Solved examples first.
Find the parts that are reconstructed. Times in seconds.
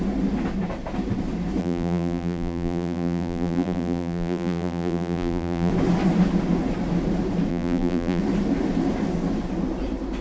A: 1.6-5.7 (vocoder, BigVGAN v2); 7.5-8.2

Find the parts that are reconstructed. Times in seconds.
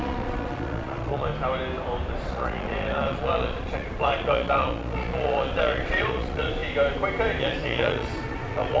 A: 0.0-1.3 (vocoder, Vocos); 2.1-6.6; 7.4-8.8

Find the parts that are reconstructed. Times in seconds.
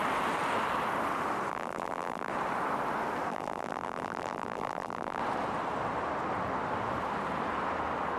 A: 1.5-2.3 (vocoder, BigVGAN v2); 3.3-5.2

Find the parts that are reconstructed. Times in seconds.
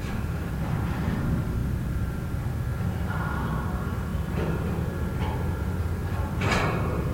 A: 0.0-1.6 (vocoder, BigVGAN v2); 2.8-4.1; 5.2-7.1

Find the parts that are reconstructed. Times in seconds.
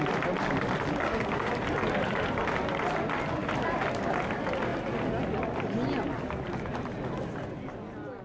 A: 1.0-1.5 (codec, SNAC)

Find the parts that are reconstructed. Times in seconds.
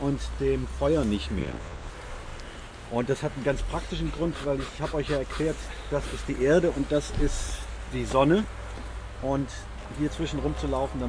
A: 1.4-1.9 (vocoder, Vocos)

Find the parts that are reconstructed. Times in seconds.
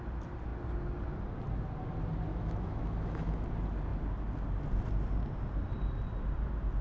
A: 2.3-3.4 (autoencoder, DAC-VAE)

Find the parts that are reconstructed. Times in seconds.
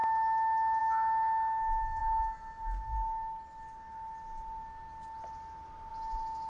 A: none